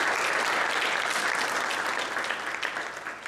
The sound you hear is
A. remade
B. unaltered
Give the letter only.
B